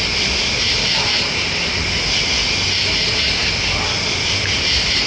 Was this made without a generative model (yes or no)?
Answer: yes